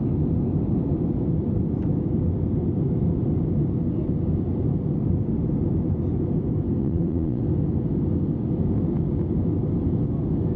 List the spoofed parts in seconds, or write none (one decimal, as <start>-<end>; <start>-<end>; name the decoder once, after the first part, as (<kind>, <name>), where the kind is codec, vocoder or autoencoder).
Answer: 6.8-7.4 (vocoder, Vocos)